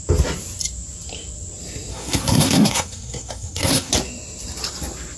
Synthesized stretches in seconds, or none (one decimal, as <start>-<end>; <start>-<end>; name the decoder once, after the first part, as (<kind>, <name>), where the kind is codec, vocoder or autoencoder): 1.9-3.9 (codec, SNAC)